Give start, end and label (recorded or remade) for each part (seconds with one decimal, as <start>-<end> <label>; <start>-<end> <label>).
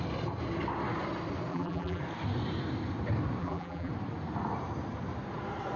0.0-1.5 recorded; 1.5-2.0 remade; 2.0-3.4 recorded; 3.4-3.9 remade; 3.9-5.8 recorded